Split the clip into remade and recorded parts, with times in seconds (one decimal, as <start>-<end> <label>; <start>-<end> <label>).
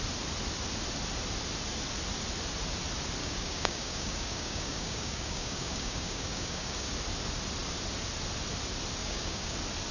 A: 0.0-3.2 recorded; 3.2-6.9 remade; 6.9-9.0 recorded; 9.0-9.5 remade; 9.5-9.9 recorded